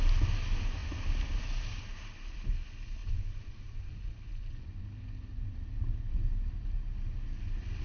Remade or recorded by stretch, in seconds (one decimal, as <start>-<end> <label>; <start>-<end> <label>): 0.0-3.0 recorded; 3.0-4.8 remade; 4.8-7.8 recorded